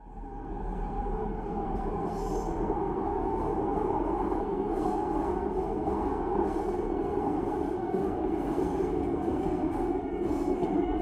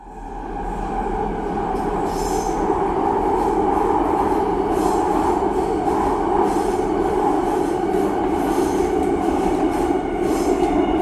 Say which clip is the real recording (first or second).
second